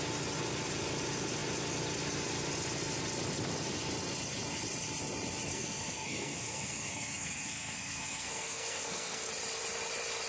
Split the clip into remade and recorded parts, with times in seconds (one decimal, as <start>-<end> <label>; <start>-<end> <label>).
0.0-5.5 recorded; 5.5-9.3 remade; 9.3-10.3 recorded